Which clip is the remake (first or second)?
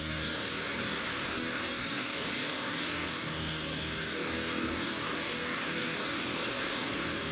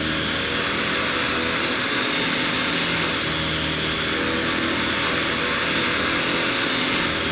first